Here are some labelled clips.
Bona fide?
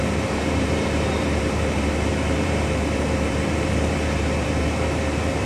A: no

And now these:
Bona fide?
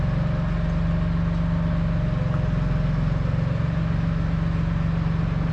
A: yes